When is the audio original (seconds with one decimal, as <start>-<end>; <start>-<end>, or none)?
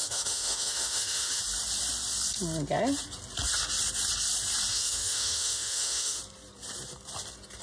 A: 1.4-4.7; 6.2-7.6